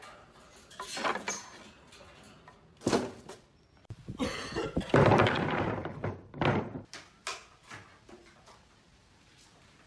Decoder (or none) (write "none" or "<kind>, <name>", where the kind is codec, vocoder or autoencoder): none